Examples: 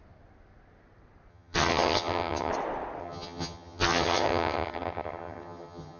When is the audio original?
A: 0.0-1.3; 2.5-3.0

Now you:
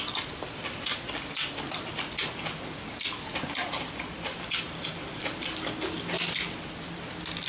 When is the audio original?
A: 0.0-7.5

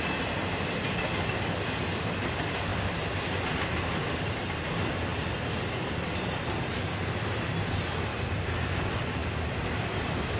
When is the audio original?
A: 0.0-10.4

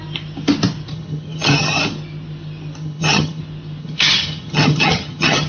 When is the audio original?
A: 0.0-0.9; 1.8-2.8; 3.4-3.8

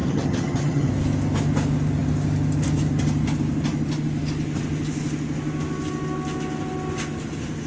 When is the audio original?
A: 0.9-7.7